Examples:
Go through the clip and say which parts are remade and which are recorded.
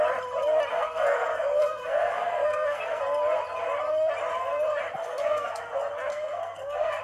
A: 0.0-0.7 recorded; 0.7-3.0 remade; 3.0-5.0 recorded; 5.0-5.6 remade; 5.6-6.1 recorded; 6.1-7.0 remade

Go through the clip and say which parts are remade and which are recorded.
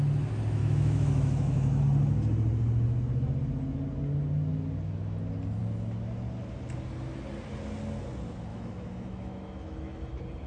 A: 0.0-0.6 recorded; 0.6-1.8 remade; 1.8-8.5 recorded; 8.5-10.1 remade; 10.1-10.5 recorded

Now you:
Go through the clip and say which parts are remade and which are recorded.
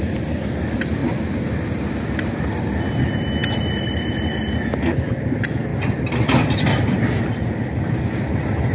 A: 0.0-8.7 recorded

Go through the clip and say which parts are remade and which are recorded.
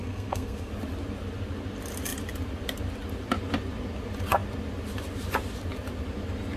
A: 0.0-0.7 remade; 0.7-6.6 recorded